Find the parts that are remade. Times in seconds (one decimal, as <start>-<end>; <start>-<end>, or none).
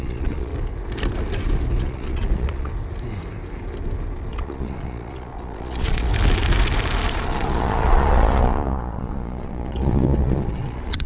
0.0-0.5; 1.8-2.7; 4.3-6.1; 7.1-11.1